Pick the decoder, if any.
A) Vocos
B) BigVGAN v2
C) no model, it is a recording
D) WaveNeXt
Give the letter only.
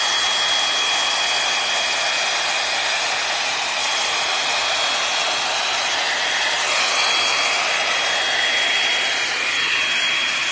C